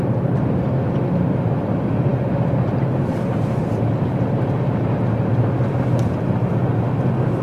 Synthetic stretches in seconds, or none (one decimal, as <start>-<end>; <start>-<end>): 2.1-6.5